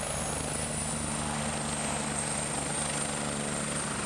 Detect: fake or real real